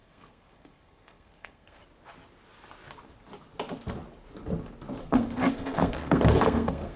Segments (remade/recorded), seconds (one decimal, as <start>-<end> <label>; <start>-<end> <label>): 0.0-1.8 remade; 1.8-5.0 recorded; 5.0-7.0 remade